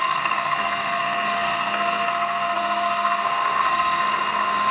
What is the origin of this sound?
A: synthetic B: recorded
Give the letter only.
A